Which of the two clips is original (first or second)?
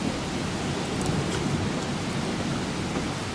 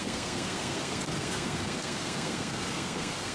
first